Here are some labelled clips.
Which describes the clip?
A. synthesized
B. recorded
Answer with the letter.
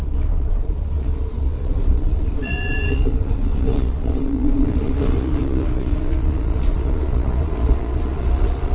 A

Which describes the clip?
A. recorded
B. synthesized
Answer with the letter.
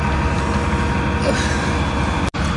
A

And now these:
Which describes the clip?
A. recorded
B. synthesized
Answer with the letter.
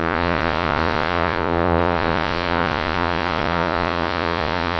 B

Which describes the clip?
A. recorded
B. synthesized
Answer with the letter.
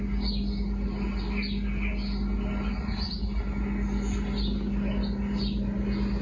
A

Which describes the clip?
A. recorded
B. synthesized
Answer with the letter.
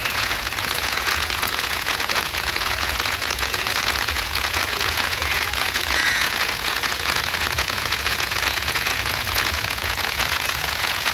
B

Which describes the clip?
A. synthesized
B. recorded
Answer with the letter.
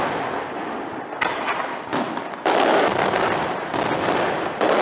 B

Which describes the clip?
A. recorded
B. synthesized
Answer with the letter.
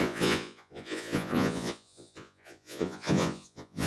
B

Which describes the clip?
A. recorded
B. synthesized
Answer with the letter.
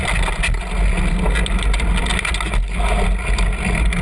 A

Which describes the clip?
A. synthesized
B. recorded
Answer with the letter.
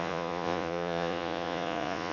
A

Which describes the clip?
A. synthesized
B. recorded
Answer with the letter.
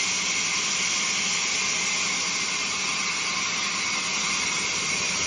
B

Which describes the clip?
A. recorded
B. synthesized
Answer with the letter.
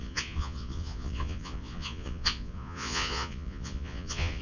B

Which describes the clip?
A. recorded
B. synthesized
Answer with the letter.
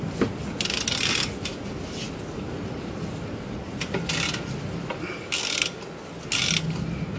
A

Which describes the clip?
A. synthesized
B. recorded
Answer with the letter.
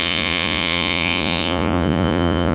A